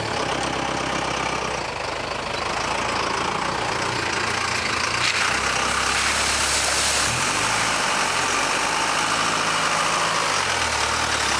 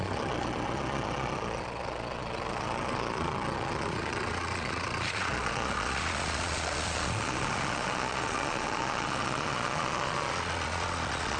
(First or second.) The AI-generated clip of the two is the second